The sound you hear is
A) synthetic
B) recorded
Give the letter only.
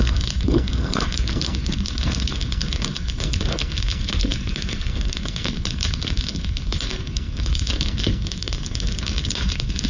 A